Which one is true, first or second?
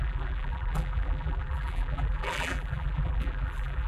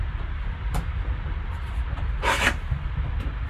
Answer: second